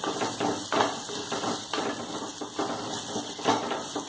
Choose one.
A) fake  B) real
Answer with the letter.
B